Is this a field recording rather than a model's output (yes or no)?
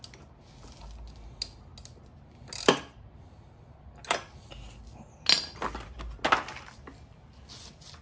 yes